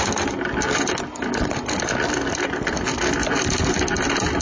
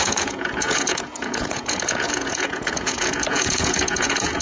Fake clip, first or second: second